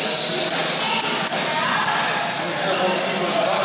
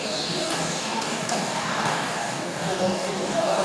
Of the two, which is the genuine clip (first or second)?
first